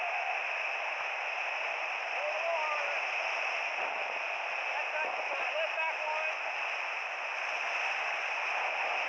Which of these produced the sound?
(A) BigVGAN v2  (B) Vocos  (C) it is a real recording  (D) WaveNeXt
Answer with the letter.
C